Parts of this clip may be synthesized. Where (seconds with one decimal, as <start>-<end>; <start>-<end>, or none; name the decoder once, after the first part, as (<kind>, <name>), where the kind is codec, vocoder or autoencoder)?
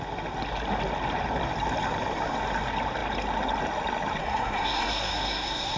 4.2-5.8 (codec, SNAC)